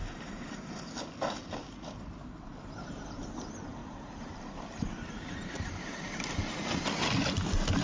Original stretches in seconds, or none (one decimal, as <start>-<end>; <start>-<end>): 0.9-3.8; 5.9-7.8